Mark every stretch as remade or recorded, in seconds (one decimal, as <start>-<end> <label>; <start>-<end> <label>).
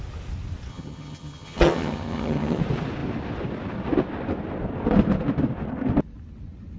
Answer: 0.0-0.7 recorded; 0.7-2.6 remade; 2.6-6.8 recorded